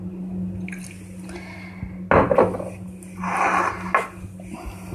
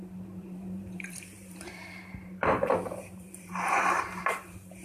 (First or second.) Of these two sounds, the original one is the first